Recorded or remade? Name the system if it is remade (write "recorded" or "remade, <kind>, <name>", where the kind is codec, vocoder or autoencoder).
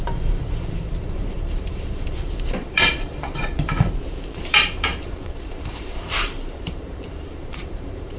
remade, vocoder, BigVGAN v2